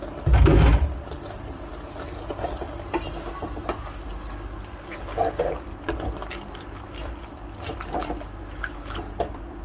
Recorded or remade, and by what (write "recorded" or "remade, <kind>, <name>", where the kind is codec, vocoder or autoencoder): recorded